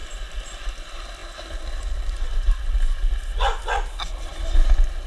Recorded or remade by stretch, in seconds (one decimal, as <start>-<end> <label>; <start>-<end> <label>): 0.0-5.1 recorded